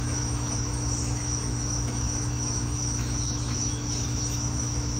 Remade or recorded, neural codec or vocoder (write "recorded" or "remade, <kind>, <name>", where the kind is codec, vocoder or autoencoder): remade, autoencoder, DAC-VAE